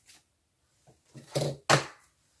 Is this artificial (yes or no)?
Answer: no